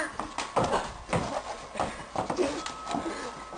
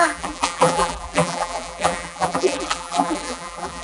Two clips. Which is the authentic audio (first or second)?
first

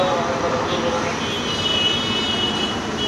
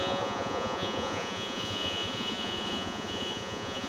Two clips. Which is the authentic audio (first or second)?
first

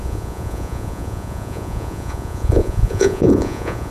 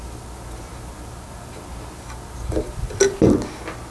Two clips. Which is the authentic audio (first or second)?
second